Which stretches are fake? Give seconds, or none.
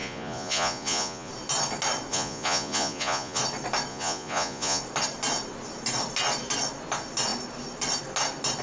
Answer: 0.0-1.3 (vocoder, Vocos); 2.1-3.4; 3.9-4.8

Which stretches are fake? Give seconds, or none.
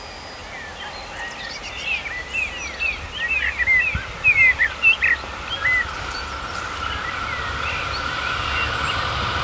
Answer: none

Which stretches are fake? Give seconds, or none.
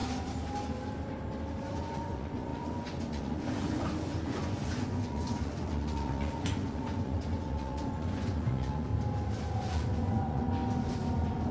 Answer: 1.7-8.9 (vocoder, Vocos); 9.7-10.6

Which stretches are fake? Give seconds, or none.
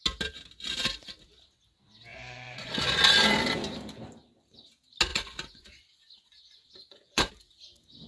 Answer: 2.1-2.7 (vocoder, Vocos); 5.1-7.3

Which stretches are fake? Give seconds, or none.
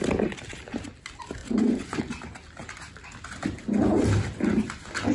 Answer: 1.4-2.0 (vocoder, Vocos)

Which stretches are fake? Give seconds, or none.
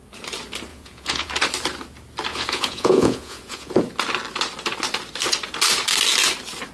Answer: 0.7-1.3 (vocoder, Vocos); 2.3-3.8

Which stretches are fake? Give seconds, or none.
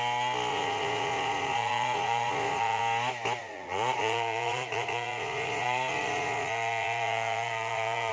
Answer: 0.5-2.8 (vocoder, Vocos); 3.4-8.1